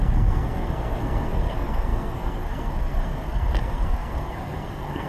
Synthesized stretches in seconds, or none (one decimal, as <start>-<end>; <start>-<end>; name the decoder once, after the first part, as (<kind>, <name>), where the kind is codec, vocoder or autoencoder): 0.0-5.1 (codec, SNAC)